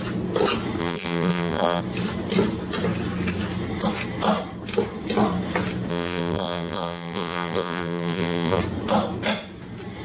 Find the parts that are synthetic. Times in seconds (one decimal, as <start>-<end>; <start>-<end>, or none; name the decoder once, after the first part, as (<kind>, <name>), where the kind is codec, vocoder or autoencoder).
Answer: 0.8-1.8 (vocoder, BigVGAN v2); 5.9-8.6